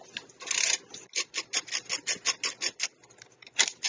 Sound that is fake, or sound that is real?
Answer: real